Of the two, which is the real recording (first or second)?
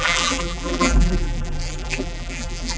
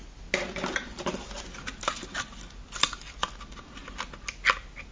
second